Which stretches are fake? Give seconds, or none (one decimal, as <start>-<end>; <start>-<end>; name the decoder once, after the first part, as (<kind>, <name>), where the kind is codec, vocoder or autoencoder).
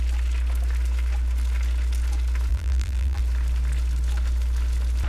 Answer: 2.5-3.2 (vocoder, BigVGAN v2)